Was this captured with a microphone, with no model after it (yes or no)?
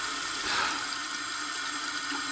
yes